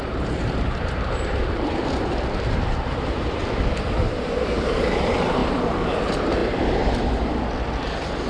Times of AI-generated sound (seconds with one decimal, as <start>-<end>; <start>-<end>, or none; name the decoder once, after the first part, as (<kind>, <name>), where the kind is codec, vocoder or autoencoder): 0.0-3.4 (vocoder, BigVGAN v2); 4.1-5.4; 6.0-6.4